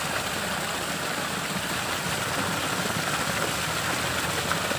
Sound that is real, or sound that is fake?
real